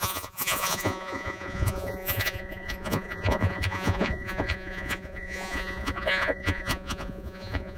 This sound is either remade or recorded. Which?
remade